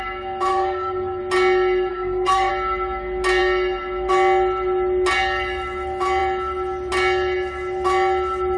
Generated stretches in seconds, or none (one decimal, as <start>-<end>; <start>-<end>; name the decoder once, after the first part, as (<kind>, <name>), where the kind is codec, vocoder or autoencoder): 0.5-1.2 (codec, SNAC); 1.9-2.5